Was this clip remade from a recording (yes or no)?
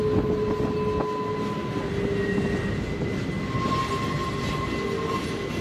no